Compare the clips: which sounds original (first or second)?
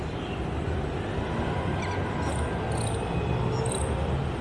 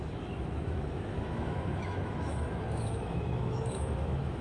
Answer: first